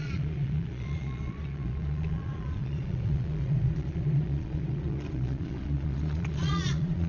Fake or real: fake